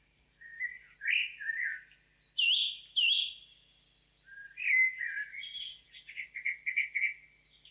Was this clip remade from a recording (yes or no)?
no